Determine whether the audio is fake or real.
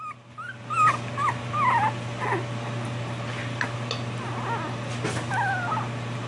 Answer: real